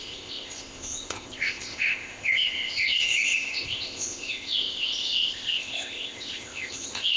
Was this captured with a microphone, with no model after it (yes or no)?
no